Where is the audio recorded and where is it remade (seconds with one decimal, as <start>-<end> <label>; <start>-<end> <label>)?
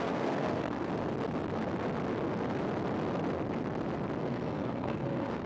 0.0-0.9 remade; 0.9-4.2 recorded; 4.2-5.5 remade